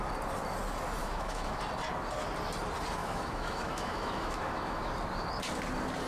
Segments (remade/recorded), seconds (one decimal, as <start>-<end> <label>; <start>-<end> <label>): 0.0-1.0 recorded; 1.0-1.6 remade; 1.6-3.0 recorded; 3.0-4.9 remade; 4.9-6.1 recorded